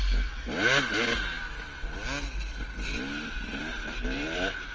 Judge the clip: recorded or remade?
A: recorded